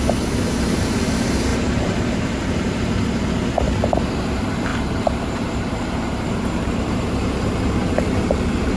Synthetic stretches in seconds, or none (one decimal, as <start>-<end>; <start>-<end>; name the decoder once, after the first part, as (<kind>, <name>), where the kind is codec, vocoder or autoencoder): 1.5-3.2 (vocoder, BigVGAN v2); 4.7-8.3